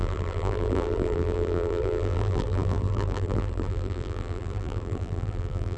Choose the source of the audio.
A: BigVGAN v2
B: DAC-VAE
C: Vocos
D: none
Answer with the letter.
A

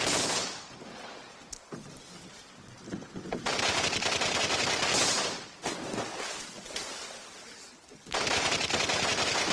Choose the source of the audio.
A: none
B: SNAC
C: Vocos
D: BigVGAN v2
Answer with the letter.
A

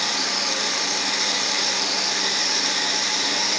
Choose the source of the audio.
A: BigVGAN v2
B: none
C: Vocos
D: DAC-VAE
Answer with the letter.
A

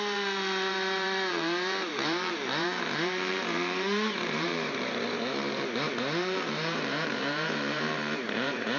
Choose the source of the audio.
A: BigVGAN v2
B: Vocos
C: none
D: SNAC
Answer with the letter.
A